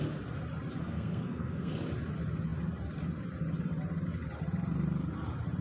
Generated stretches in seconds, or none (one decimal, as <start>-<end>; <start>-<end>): 0.8-1.7